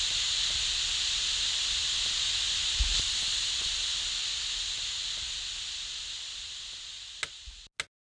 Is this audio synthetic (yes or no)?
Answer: no